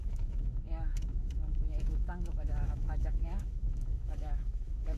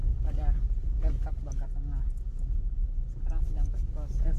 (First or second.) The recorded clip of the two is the second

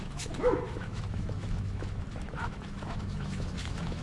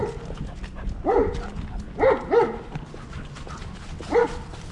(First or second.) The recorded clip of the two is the second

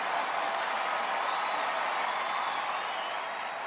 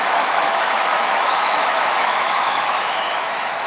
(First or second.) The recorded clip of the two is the first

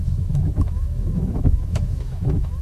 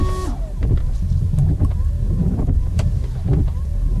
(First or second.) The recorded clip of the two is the second